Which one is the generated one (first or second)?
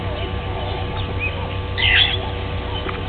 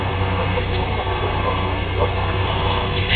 second